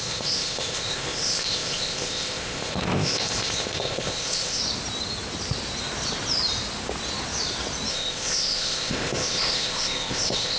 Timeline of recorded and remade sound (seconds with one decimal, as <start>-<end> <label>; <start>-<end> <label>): 0.0-4.6 remade; 4.6-7.9 recorded; 7.9-10.6 remade